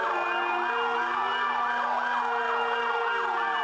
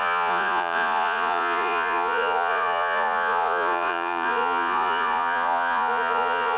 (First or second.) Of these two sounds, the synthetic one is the second